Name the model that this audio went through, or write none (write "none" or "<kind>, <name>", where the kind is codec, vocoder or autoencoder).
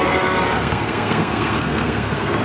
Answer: codec, SNAC